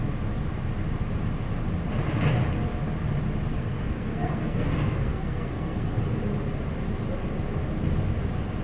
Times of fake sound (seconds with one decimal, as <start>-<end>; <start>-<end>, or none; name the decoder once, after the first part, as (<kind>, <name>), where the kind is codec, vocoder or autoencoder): 3.5-6.2 (codec, SNAC)